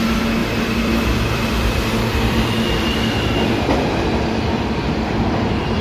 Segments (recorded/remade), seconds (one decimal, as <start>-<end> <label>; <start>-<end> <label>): 0.0-0.4 recorded; 0.4-3.9 remade; 3.9-5.8 recorded